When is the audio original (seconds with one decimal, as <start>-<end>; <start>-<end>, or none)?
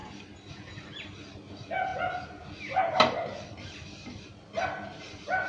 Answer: 0.0-5.5